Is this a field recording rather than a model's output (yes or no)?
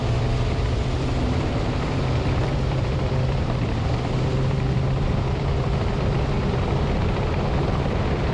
no